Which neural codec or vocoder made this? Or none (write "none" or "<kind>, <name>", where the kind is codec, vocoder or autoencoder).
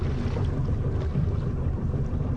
none